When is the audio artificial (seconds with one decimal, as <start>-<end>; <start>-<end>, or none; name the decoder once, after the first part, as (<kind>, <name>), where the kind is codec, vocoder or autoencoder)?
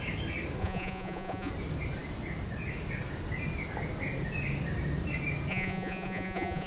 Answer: 0.6-1.5 (vocoder, Vocos); 5.5-6.7